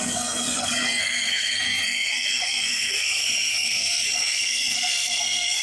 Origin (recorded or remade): remade